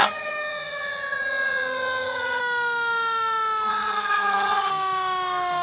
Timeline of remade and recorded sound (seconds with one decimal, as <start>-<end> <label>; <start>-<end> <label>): 0.0-2.4 remade; 2.4-3.7 recorded; 3.7-4.7 remade; 4.7-5.6 recorded